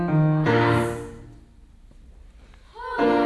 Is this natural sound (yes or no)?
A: yes